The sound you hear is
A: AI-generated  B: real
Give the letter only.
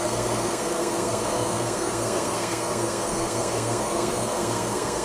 A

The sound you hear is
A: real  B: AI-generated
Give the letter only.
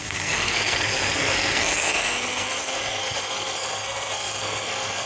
B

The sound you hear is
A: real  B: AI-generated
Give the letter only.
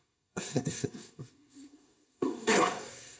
B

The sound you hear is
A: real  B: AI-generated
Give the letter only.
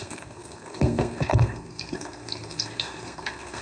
B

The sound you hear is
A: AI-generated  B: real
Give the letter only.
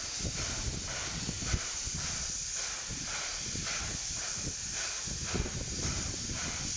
B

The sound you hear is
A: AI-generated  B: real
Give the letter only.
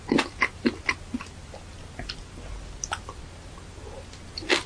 B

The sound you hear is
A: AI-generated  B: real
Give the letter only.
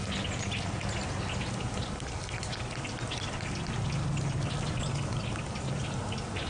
B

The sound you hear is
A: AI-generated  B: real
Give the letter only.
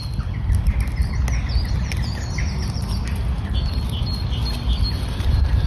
B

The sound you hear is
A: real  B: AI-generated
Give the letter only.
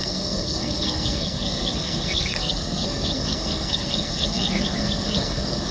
B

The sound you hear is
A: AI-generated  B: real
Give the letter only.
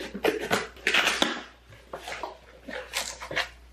B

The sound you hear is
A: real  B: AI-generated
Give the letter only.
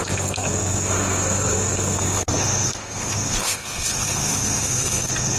B